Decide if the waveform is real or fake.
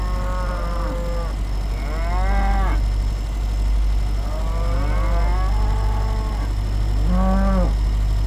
real